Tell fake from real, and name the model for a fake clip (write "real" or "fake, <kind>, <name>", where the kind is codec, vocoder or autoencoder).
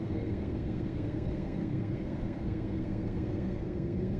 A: fake, codec, SNAC